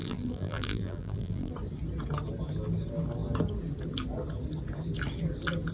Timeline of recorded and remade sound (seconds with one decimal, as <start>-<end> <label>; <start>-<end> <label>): 0.0-1.5 remade; 1.5-5.7 recorded